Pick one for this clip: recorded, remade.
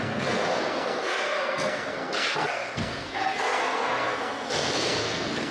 remade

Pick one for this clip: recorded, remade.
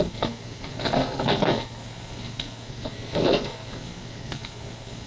remade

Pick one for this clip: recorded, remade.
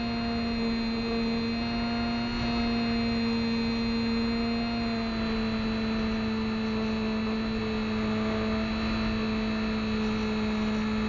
recorded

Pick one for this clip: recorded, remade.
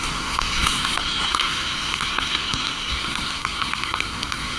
remade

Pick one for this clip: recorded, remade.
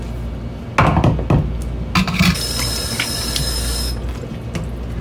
recorded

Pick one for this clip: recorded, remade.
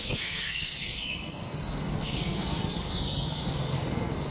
remade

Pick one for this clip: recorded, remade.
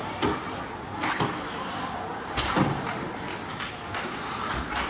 recorded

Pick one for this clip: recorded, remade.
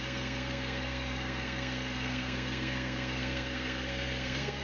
remade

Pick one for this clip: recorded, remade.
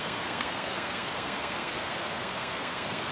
remade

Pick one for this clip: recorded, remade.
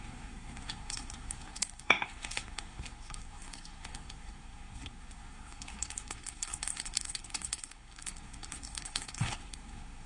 remade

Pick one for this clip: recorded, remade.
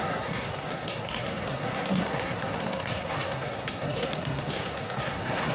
remade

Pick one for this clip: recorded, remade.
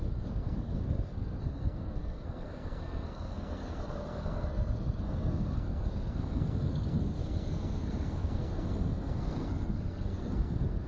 remade